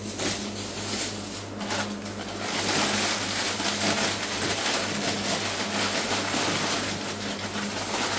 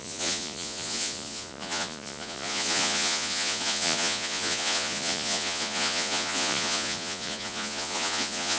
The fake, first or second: second